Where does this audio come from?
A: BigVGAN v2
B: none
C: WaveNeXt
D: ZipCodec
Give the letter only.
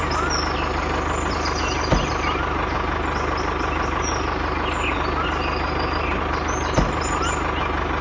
B